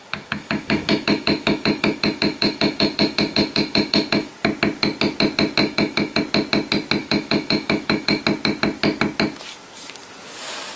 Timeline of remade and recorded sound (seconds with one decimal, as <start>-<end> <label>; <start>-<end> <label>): 0.0-4.3 remade; 4.3-5.6 recorded; 5.6-6.2 remade; 6.2-7.0 recorded; 7.0-8.2 remade; 8.2-10.8 recorded